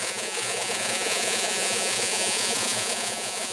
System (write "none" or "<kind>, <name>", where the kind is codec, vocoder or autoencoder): vocoder, Vocos